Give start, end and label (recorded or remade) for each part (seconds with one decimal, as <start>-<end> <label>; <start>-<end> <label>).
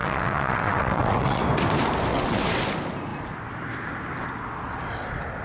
0.0-1.4 remade; 1.4-2.1 recorded; 2.1-2.6 remade; 2.6-5.4 recorded